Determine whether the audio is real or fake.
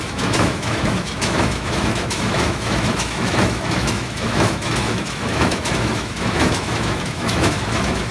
fake